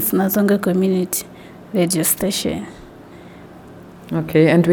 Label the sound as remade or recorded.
recorded